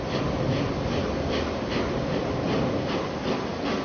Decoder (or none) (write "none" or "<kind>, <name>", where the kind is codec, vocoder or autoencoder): none